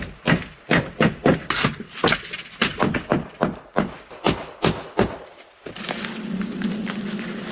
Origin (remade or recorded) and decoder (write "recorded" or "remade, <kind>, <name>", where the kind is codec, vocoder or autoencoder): recorded